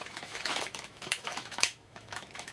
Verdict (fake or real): fake